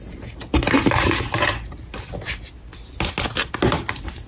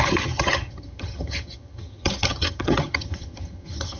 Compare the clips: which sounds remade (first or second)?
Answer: second